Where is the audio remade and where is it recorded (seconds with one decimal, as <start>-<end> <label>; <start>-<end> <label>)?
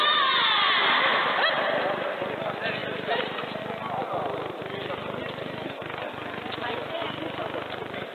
0.0-8.1 recorded